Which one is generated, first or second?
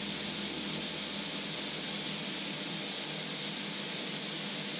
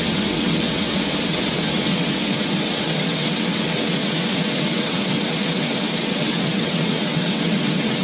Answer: second